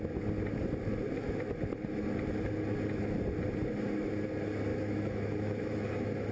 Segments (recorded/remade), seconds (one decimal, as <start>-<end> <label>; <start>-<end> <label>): 0.0-4.7 recorded; 4.7-6.3 remade